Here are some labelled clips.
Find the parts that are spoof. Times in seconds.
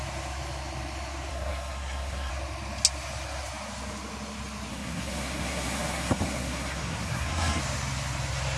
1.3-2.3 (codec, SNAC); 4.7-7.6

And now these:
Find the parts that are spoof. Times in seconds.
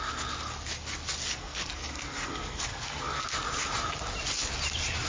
1.3-3.2 (codec, SNAC)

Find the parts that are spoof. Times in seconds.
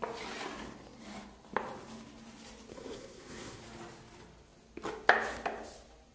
2.7-3.6 (codec, SNAC)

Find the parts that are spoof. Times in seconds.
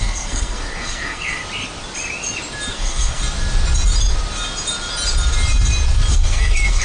0.0-1.4 (codec, SNAC); 2.7-3.2; 6.1-6.8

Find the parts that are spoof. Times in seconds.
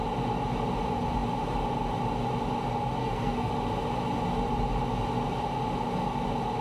3.0-3.5 (codec, SNAC)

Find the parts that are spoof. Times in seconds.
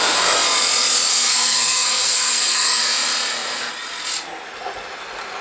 1.1-2.8 (codec, SNAC)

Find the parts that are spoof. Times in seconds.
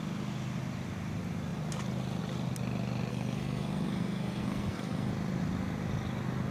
3.1-5.1 (codec, SNAC)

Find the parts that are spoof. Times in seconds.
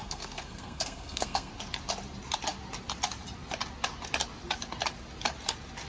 0.0-1.5 (codec, SNAC)